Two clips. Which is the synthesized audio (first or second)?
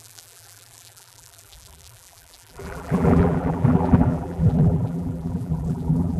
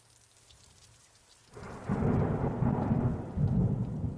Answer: first